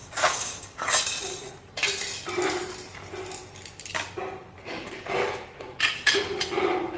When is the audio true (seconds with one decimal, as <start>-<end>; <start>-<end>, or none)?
1.0-7.0